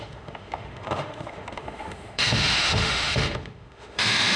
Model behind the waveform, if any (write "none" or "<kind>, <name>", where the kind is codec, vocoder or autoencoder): autoencoder, DAC-VAE